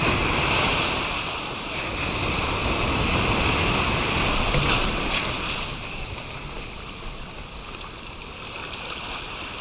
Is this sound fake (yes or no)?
no